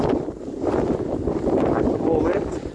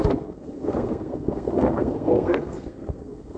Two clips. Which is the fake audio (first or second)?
second